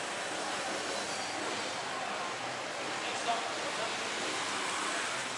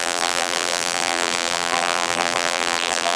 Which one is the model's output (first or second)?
second